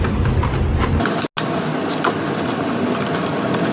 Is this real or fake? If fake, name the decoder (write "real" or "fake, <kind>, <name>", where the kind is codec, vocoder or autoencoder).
real